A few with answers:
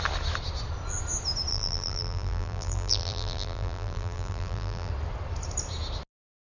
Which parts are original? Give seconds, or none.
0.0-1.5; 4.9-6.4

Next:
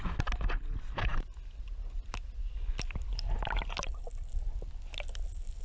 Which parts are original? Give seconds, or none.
0.0-5.6

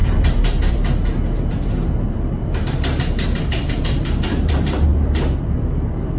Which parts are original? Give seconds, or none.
none

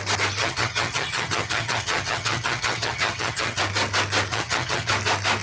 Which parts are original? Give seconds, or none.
0.0-0.4; 3.6-4.3; 4.9-5.4

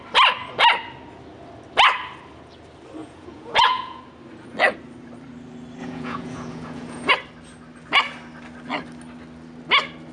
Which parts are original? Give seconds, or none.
0.0-3.0; 4.0-5.8; 7.1-10.1

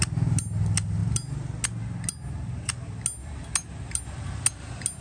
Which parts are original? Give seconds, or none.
0.0-5.0